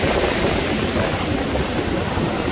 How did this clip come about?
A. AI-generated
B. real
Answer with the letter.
B